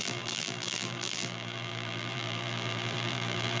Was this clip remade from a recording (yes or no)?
yes